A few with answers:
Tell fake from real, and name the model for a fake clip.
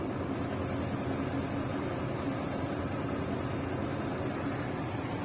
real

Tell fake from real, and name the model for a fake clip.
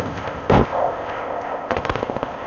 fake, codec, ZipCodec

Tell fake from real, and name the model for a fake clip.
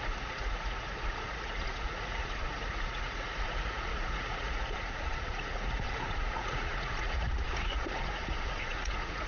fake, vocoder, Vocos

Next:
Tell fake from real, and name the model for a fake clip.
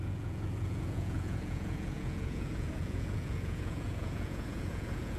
fake, vocoder, Vocos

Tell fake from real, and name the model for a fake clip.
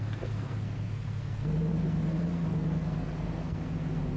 fake, codec, SNAC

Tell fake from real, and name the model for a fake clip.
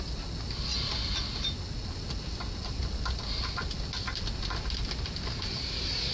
real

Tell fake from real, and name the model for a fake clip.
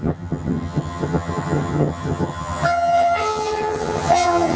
fake, vocoder, HiFi-GAN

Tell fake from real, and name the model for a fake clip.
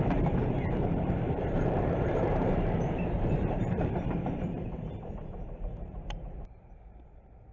fake, vocoder, BigVGAN v2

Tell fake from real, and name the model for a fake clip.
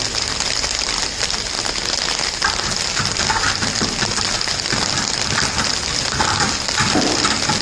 real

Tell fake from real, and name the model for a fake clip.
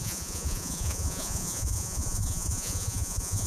fake, vocoder, Vocos